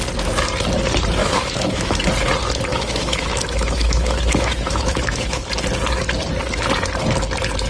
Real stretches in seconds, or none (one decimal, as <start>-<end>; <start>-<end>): 0.0-1.2; 2.1-2.7; 5.5-7.7